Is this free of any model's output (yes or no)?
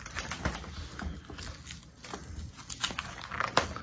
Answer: yes